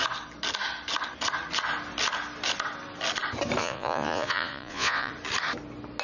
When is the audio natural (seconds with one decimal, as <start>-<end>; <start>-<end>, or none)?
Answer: 0.0-3.6; 5.1-6.0